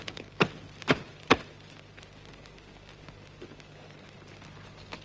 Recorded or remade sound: recorded